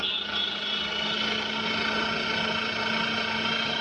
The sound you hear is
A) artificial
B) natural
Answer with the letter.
B